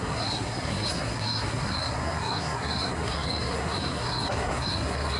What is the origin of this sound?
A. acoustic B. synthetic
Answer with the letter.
B